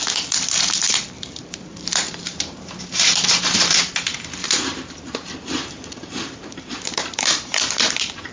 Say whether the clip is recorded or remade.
remade